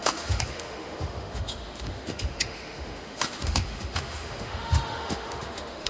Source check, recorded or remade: remade